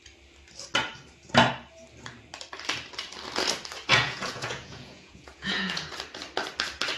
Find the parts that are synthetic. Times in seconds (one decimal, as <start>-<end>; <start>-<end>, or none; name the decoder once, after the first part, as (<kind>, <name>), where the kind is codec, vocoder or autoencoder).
3.9-5.9 (vocoder, Vocos)